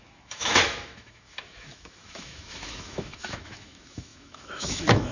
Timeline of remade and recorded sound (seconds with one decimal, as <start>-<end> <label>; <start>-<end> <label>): 0.0-5.1 remade